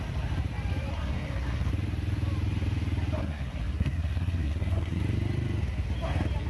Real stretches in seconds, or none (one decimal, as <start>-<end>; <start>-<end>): 0.0-0.9; 1.7-3.2; 5.0-6.5